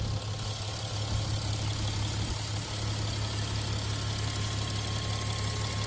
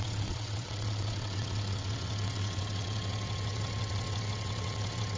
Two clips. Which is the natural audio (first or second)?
first